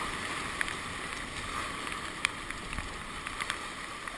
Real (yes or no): yes